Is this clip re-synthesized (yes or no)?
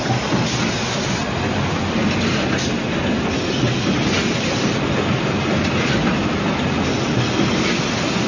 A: no